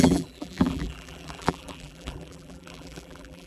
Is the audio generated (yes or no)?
yes